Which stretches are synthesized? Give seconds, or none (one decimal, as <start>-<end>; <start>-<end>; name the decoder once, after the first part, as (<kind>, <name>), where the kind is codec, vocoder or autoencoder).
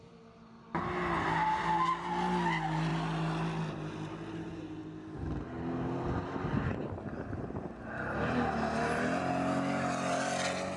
none